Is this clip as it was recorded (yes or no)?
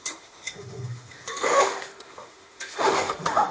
no